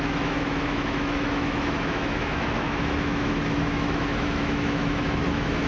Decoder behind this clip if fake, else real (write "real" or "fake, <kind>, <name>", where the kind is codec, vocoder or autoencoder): fake, autoencoder, DAC-VAE